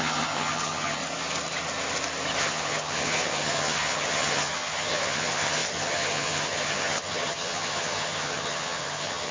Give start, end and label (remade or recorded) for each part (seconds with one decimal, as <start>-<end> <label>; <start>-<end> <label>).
0.0-1.0 remade; 1.0-2.4 recorded; 2.4-9.3 remade